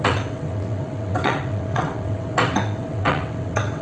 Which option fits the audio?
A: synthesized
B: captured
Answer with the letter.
A